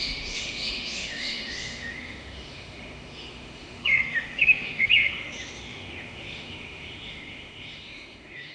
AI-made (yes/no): yes